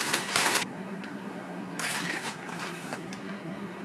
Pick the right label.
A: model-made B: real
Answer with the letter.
A